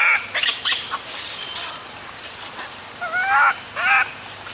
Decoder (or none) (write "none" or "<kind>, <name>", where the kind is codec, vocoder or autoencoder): none